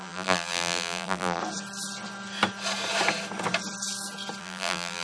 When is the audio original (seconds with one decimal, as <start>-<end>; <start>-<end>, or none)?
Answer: 1.4-4.4